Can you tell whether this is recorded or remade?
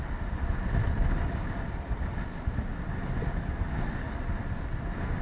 recorded